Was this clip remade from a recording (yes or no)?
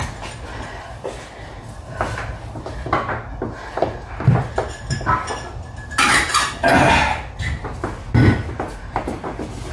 no